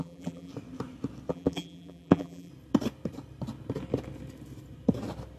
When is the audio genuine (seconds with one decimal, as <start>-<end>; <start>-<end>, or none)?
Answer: 0.5-1.3; 2.5-5.4